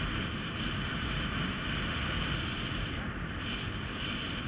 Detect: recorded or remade recorded